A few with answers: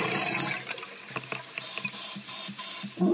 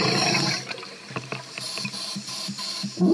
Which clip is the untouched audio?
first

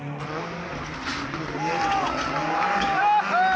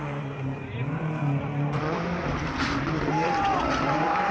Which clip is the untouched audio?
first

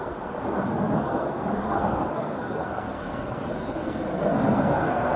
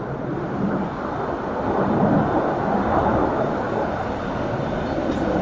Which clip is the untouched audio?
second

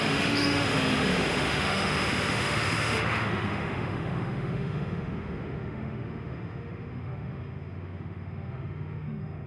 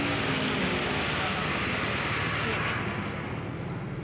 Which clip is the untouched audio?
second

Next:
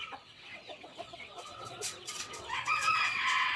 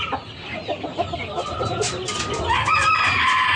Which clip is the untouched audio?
second